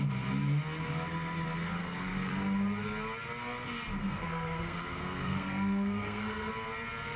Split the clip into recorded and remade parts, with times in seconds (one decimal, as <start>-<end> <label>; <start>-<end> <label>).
0.0-1.8 recorded; 1.8-2.3 remade; 2.3-4.0 recorded; 4.0-6.5 remade; 6.5-7.2 recorded